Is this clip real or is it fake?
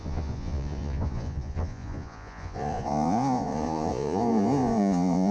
fake